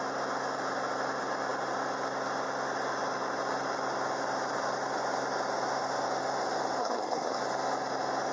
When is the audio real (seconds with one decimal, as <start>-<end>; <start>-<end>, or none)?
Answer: 0.0-6.8; 7.4-8.3